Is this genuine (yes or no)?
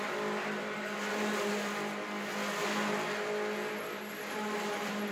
yes